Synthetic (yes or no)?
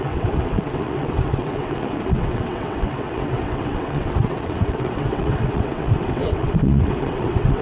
yes